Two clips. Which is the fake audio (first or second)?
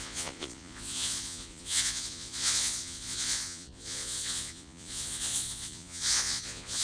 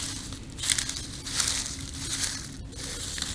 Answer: first